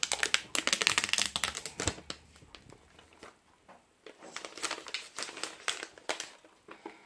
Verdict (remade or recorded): recorded